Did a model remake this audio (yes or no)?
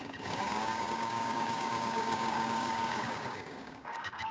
yes